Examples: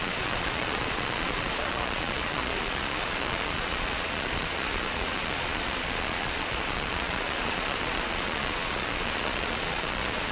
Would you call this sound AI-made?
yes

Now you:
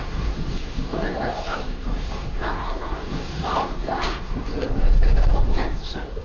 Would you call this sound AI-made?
yes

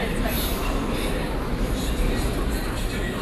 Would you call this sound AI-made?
no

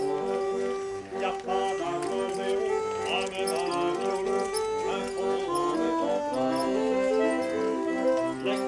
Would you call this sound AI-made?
no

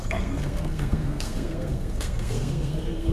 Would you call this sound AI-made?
yes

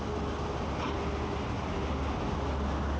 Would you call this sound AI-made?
no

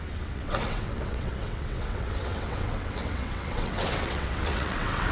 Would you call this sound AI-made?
yes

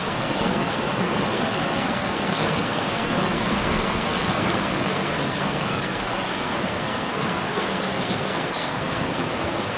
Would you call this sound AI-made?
yes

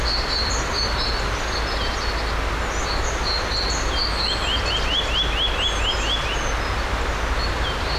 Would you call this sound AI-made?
no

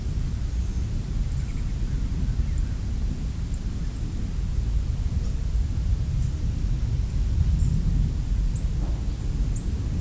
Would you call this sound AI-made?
no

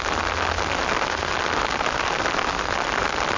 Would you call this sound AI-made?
no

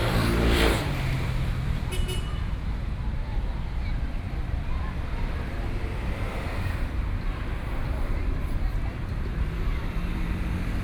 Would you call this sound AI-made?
yes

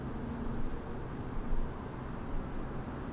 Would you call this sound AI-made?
no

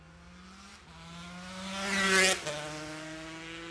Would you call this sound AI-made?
no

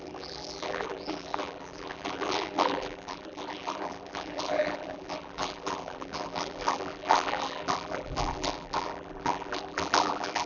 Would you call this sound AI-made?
yes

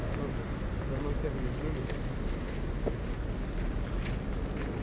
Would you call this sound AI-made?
no